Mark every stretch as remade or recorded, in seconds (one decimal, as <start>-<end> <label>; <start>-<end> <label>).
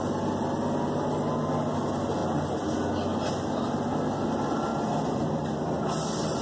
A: 0.0-6.4 recorded